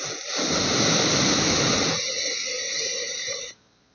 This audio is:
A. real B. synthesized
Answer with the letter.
A